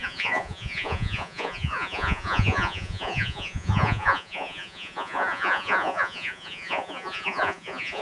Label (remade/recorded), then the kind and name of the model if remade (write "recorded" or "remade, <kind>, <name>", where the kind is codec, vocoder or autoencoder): remade, vocoder, Vocos